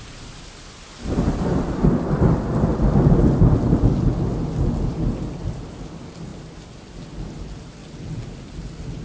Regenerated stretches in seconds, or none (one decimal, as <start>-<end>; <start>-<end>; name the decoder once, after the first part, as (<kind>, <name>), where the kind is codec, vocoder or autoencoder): none